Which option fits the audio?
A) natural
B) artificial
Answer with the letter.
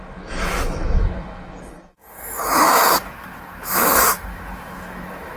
B